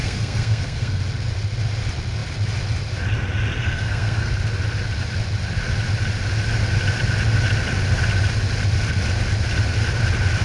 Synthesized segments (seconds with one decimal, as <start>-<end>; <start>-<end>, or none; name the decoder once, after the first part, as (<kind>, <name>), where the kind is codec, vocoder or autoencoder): 0.0-1.0 (codec, SNAC); 3.6-4.3